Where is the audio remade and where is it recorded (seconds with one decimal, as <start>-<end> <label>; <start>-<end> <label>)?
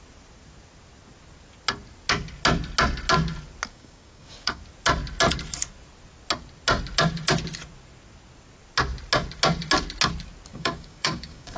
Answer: 0.0-3.7 recorded; 3.7-4.6 remade; 4.6-10.5 recorded; 10.5-11.6 remade